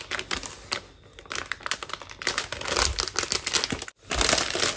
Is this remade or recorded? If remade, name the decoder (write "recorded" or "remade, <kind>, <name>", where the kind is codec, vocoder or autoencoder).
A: recorded